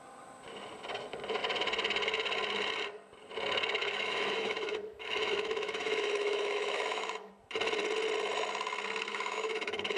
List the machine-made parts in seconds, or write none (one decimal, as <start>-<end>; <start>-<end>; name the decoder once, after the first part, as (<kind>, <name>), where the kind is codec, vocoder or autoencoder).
3.8-7.3 (autoencoder, DAC-VAE); 9.1-10.0